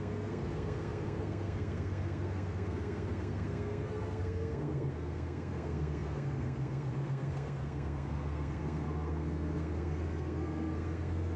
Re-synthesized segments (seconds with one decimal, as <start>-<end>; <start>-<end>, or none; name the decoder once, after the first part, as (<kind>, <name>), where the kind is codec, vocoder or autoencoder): 0.0-11.4 (codec, SNAC)